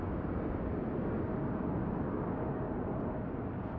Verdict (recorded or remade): recorded